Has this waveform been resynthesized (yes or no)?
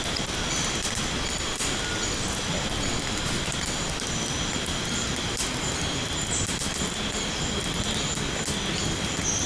no